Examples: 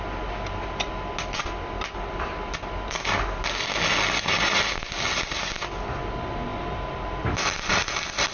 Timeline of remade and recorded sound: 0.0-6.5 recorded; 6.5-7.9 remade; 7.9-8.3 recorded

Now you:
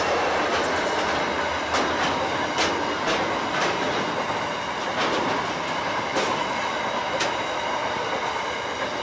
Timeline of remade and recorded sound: 0.0-9.0 recorded

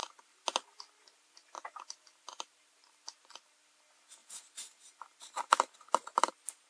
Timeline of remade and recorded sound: 0.0-6.7 recorded

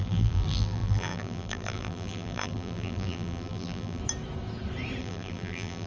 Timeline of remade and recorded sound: 0.0-4.0 remade; 4.0-5.0 recorded; 5.0-5.9 remade

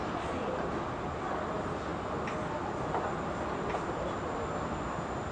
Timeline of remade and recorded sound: 0.0-5.3 recorded

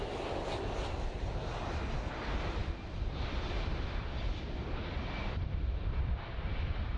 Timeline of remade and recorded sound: 0.0-2.6 recorded; 2.6-6.1 remade; 6.1-7.0 recorded